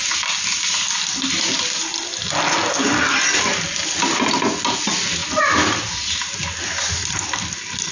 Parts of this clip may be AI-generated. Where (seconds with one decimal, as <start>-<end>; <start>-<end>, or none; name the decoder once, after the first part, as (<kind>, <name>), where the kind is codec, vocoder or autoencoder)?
none

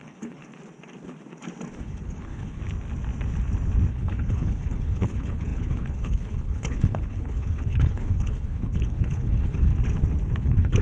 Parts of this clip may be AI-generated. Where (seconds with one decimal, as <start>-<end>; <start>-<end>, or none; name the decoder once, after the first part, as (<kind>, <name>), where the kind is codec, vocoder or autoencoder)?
0.0-0.4 (codec, HILCodec); 1.8-2.6; 3.9-9.7; 10.4-10.8

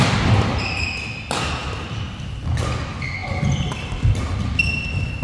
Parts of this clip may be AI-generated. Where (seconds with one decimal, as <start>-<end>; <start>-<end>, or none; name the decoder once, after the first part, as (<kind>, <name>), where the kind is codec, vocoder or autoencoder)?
none

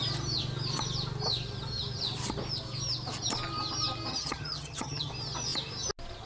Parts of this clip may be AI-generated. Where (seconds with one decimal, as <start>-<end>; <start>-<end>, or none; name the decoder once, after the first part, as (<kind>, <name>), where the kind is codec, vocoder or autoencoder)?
4.1-5.1 (vocoder, HiFi-GAN)

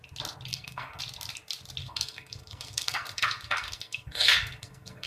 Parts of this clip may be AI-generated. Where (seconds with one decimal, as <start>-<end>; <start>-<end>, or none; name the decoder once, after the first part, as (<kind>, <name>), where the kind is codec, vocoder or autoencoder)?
0.5-1.0 (codec, SNAC); 1.8-5.1

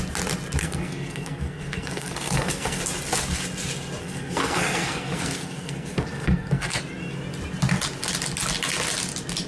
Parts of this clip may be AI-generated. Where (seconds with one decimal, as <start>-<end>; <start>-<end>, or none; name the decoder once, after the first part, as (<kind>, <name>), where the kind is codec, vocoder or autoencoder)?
0.6-2.8 (codec, SNAC); 4.0-6.8

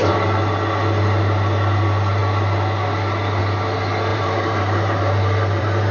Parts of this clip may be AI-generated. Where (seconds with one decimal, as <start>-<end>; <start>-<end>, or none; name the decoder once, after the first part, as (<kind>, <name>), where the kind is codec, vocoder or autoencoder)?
4.1-5.9 (vocoder, BigVGAN v2)